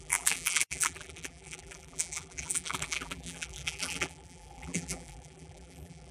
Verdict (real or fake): fake